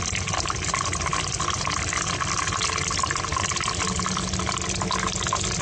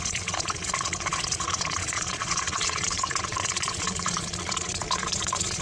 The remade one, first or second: second